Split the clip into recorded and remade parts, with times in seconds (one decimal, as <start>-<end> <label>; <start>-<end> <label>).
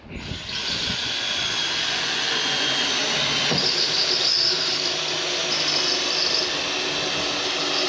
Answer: 0.0-0.6 recorded; 0.6-2.8 remade; 2.8-7.9 recorded